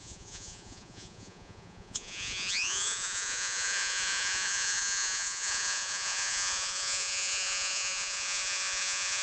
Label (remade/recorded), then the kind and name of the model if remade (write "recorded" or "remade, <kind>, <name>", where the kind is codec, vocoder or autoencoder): remade, vocoder, Vocos